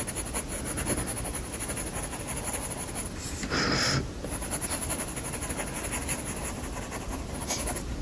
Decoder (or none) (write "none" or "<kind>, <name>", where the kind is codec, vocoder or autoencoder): none